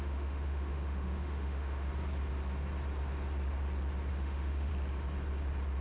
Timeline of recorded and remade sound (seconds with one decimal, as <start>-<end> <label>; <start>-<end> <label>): 0.0-1.9 remade; 1.9-4.1 recorded; 4.1-4.7 remade; 4.7-5.8 recorded

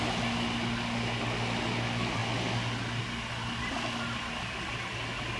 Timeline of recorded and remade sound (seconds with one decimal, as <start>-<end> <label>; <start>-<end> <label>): 0.0-5.4 recorded